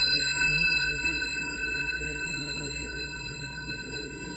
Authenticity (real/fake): fake